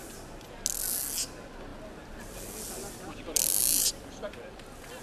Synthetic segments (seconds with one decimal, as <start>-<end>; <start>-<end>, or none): none